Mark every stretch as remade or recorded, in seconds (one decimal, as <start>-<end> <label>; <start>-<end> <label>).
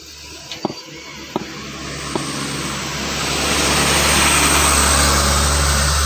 0.0-6.1 recorded